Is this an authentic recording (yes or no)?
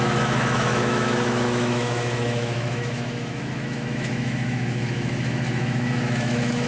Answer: no